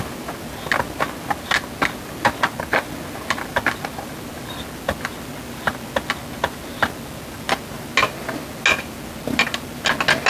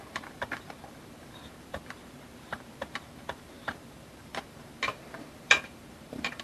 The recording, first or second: first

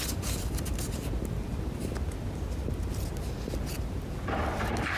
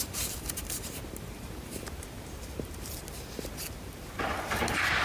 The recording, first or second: first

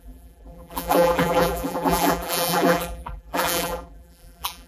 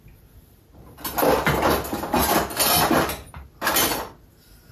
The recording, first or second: second